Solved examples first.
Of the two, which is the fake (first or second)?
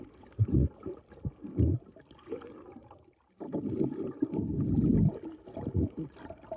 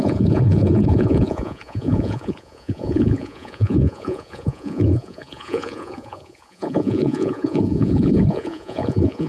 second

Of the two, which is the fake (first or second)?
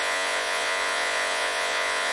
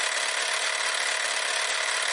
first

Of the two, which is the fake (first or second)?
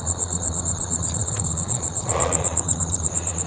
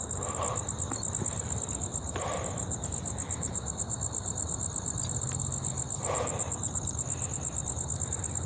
first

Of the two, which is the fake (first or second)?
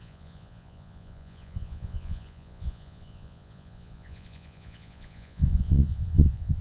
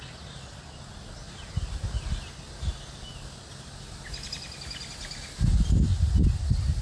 first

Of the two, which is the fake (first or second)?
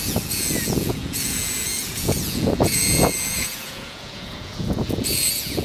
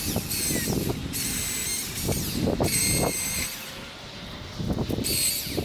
first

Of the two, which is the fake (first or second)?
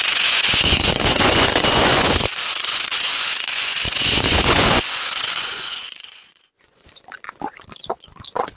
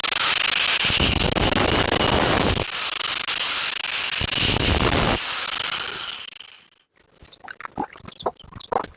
first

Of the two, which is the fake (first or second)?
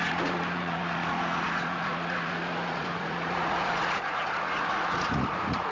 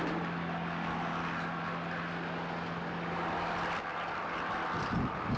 first